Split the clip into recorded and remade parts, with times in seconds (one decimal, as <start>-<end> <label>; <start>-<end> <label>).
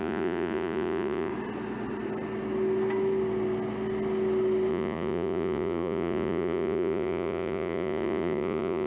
0.0-1.3 remade; 1.3-4.7 recorded; 4.7-8.9 remade